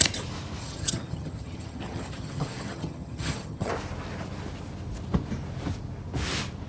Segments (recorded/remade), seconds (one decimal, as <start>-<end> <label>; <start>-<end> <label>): 0.0-0.6 recorded; 0.6-3.7 remade; 3.7-6.7 recorded